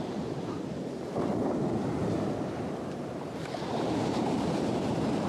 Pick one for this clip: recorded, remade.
remade